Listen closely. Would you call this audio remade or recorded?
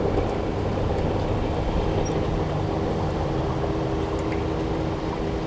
recorded